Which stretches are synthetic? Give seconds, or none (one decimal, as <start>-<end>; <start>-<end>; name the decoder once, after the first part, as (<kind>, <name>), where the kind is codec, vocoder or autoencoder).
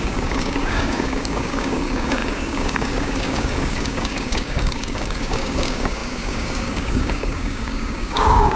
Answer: 0.0-8.6 (codec, DAC)